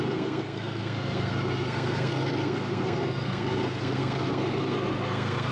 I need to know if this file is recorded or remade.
remade